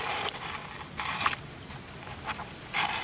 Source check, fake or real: fake